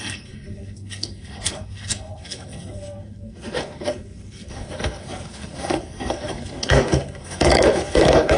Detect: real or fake fake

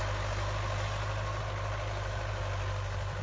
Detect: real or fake real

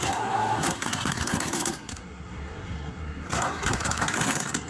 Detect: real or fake fake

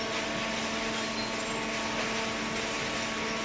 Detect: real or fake real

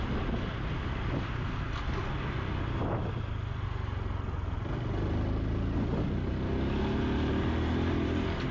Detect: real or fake real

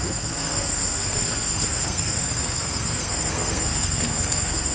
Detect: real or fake fake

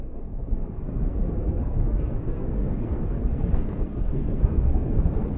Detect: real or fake fake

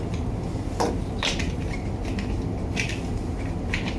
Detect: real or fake real